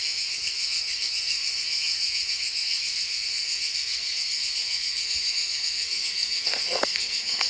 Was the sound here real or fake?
fake